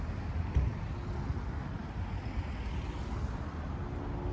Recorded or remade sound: recorded